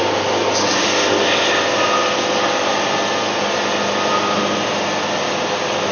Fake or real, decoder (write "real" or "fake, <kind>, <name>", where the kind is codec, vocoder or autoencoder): real